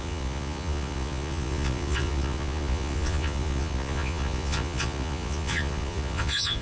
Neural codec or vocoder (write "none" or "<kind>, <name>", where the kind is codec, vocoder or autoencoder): vocoder, Vocos